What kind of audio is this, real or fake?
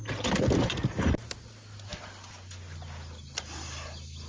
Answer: real